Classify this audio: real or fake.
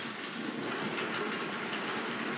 real